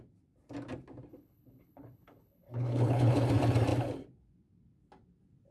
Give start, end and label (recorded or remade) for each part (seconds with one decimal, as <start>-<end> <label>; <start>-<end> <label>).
0.0-1.1 recorded; 1.1-3.3 remade; 3.3-5.5 recorded